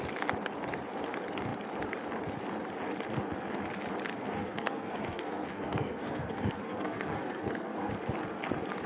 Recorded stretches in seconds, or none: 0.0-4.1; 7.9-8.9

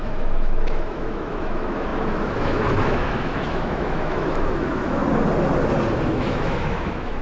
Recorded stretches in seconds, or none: 5.0-6.1

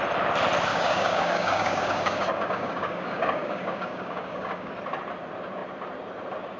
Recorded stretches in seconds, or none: 0.0-0.7; 4.7-6.6